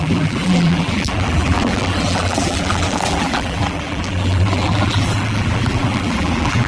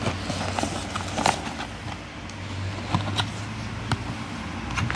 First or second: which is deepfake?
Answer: first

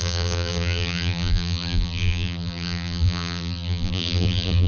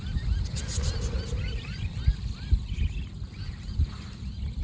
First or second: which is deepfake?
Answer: first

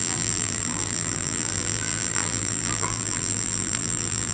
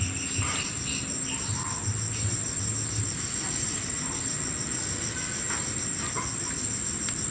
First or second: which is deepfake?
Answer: first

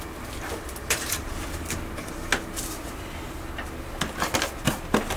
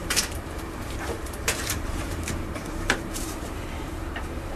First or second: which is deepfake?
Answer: second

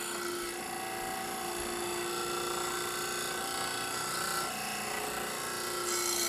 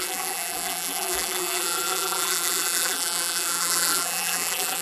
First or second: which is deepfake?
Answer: second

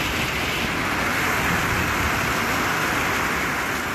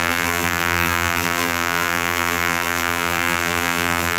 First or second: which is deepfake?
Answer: second